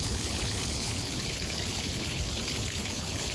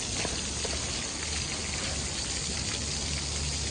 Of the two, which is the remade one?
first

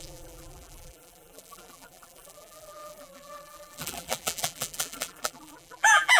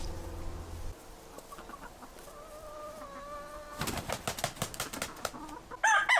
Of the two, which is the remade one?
first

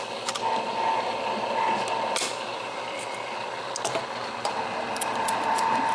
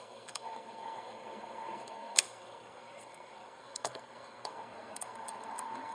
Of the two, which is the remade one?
second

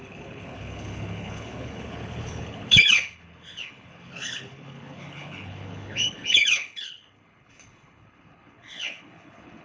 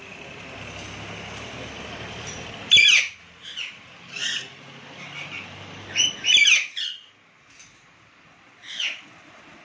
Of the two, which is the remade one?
first